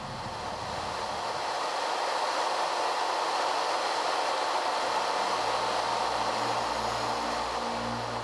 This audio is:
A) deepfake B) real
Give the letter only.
B